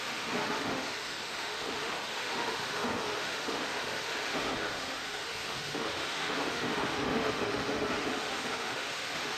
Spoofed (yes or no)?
yes